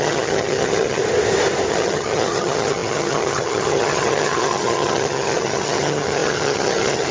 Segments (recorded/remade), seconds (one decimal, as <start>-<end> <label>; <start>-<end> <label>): 0.0-1.0 remade; 1.0-1.7 recorded; 1.7-7.1 remade